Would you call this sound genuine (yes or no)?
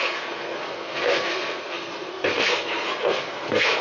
no